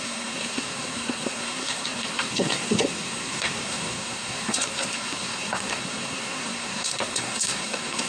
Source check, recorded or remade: remade